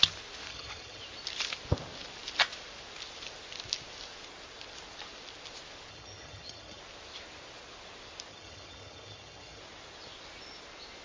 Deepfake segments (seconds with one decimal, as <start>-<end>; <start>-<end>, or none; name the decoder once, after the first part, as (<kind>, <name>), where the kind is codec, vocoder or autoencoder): 0.5-1.0 (vocoder, HiFi-GAN); 5.9-6.8; 8.3-9.6